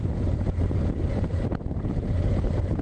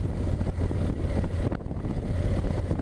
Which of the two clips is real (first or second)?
second